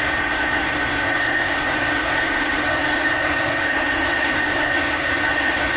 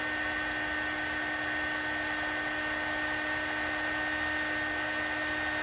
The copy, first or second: first